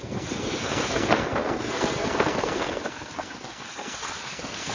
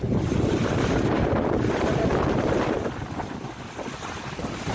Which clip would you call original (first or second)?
second